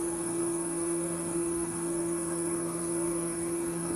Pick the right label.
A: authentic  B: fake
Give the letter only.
B